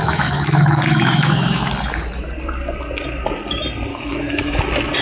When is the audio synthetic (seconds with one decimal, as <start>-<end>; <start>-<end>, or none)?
0.0-1.7; 3.9-4.6